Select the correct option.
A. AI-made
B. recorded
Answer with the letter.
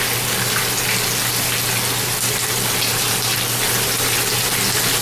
B